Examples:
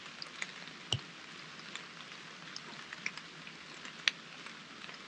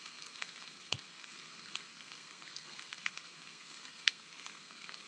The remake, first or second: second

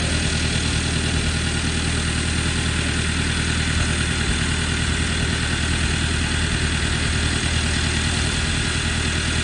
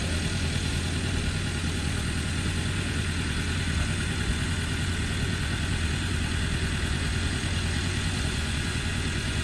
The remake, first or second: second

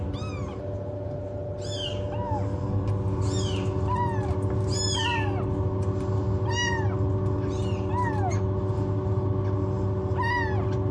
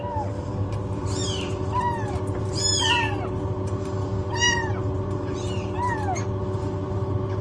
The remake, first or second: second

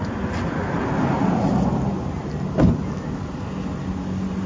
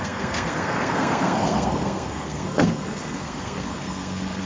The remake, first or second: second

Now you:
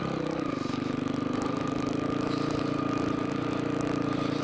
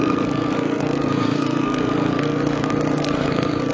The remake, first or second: second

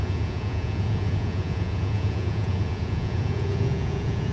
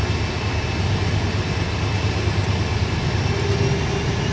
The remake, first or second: first